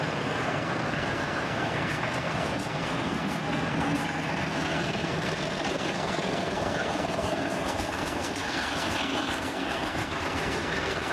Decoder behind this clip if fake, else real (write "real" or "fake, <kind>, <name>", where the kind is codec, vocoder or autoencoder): fake, codec, SNAC